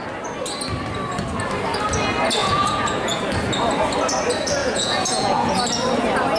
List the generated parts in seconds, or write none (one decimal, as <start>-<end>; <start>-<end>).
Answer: 2.4-3.2; 4.6-5.6